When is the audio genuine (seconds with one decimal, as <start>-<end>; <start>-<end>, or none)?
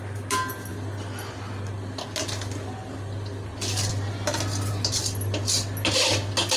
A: 0.0-6.6